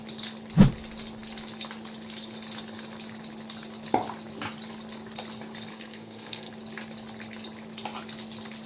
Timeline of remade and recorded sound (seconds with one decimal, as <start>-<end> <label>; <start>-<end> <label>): 0.0-5.7 recorded; 5.7-6.5 remade; 6.5-8.7 recorded